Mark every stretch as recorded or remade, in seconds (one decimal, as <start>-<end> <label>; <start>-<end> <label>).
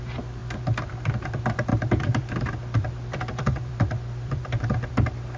0.0-1.7 recorded; 1.7-4.9 remade; 4.9-5.4 recorded